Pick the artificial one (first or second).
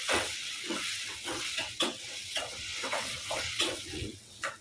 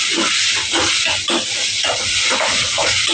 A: first